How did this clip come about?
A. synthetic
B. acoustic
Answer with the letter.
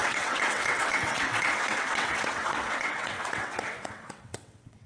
A